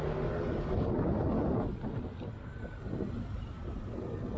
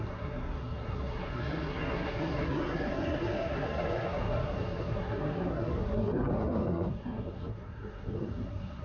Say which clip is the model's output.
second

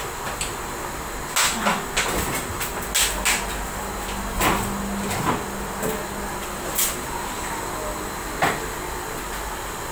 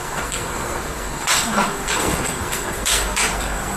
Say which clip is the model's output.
second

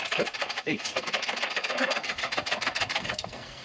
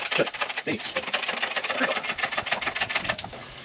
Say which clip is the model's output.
first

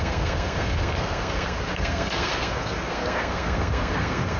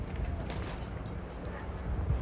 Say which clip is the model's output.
first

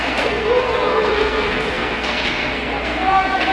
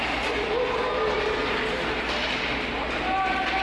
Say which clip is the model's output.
first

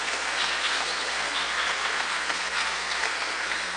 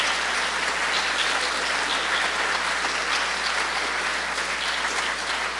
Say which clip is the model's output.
first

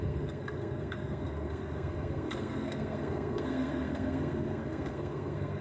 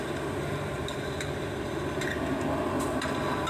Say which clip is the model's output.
first